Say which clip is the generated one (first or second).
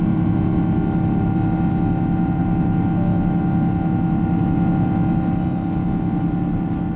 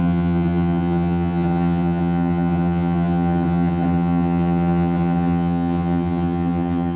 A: second